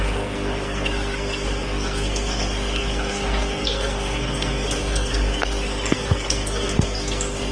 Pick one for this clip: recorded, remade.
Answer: remade